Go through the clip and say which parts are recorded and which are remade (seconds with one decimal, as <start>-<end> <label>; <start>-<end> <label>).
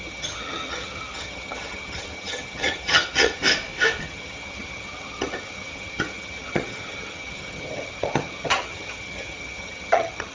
0.0-3.4 remade; 3.4-4.0 recorded; 4.0-10.3 remade